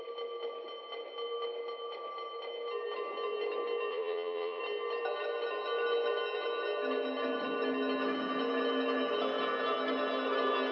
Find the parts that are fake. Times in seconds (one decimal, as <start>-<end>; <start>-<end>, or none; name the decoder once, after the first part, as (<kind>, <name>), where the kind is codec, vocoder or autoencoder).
3.9-4.6 (vocoder, Vocos)